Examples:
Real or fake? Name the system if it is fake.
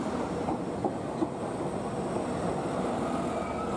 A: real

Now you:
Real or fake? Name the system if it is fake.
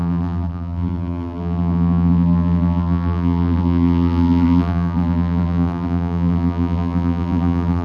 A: fake, vocoder, BigVGAN v2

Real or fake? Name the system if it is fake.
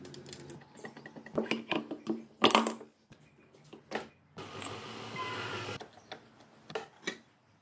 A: real